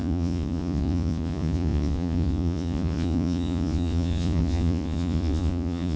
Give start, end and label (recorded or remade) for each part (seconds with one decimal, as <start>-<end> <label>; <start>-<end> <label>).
0.0-6.0 remade